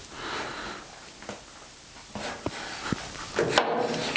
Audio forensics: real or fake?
real